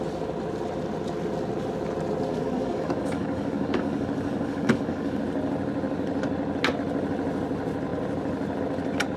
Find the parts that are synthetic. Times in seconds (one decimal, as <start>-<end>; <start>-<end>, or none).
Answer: 2.3-5.2